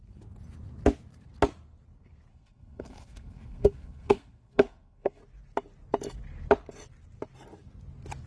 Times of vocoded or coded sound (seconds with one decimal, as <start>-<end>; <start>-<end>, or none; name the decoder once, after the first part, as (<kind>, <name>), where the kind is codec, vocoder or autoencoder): 2.3-5.2 (codec, SNAC)